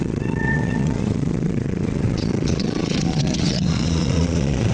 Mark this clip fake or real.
fake